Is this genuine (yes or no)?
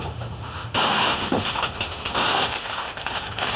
no